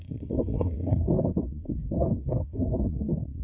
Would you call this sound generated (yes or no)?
yes